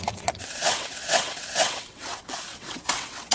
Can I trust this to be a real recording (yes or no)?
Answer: no